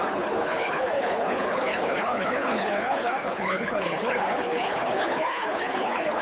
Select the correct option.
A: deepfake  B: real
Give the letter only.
A